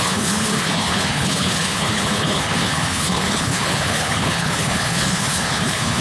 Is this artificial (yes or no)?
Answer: yes